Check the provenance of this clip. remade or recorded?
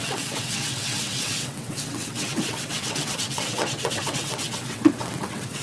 remade